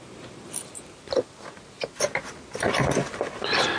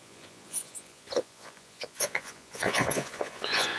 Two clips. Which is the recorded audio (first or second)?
first